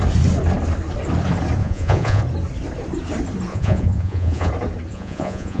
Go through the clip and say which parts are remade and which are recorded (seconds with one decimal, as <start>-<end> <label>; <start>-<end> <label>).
0.0-1.6 recorded; 1.6-2.2 remade; 2.2-3.5 recorded; 3.5-4.5 remade; 4.5-4.9 recorded; 4.9-5.6 remade